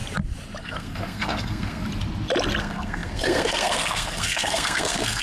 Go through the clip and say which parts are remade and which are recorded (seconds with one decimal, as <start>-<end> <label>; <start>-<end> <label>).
0.0-0.6 recorded; 0.6-1.8 remade; 1.8-2.6 recorded; 2.6-5.2 remade